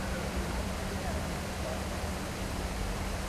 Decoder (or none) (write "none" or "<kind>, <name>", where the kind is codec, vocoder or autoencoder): vocoder, BigVGAN v2